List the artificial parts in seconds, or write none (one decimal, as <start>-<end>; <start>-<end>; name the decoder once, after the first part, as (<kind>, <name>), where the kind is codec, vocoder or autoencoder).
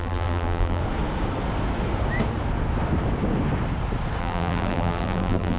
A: 0.0-0.8 (vocoder, BigVGAN v2); 4.2-5.6